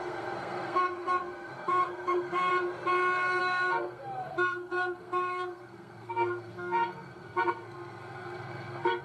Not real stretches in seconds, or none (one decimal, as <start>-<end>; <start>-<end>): 0.0-2.5; 3.4-9.0